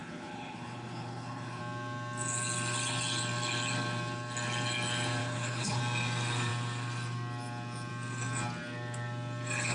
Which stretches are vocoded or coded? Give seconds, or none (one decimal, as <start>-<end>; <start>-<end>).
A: 0.0-1.6; 5.2-5.8